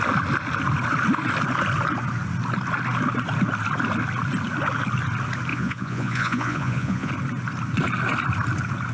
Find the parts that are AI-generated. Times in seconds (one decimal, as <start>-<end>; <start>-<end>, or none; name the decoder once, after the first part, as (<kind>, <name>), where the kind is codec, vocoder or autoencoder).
5.5-7.1 (vocoder, Vocos)